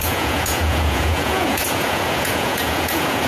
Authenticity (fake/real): fake